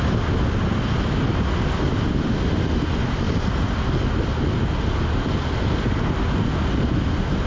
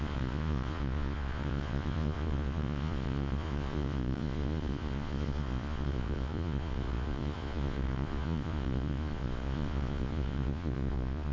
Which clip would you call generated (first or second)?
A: second